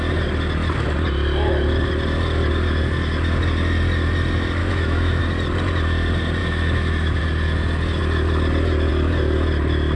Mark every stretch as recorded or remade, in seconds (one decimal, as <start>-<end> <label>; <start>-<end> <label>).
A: 0.0-4.6 recorded; 4.6-5.2 remade; 5.2-6.4 recorded; 6.4-7.2 remade; 7.2-9.9 recorded